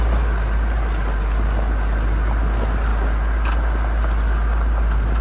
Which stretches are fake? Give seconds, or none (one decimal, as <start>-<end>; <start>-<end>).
none